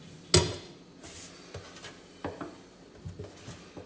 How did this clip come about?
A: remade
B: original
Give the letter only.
B